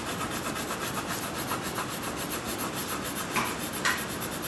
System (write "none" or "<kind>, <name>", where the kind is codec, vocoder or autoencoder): none